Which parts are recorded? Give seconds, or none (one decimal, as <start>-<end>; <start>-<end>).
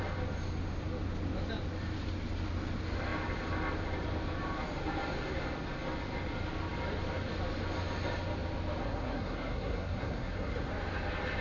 0.0-8.8; 10.7-11.4